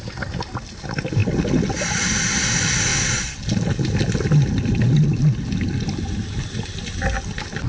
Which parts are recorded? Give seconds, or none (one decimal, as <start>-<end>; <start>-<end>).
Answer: 0.0-7.7